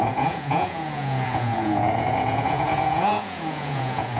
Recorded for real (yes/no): no